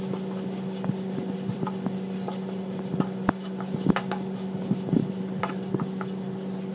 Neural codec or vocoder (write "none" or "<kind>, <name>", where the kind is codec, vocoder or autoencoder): none